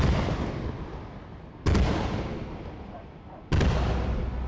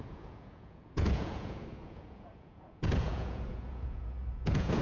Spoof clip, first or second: second